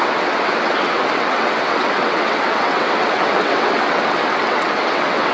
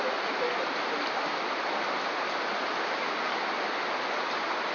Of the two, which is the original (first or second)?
second